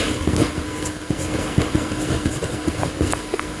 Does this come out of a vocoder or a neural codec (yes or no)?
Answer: yes